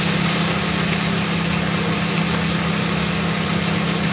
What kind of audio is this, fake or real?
real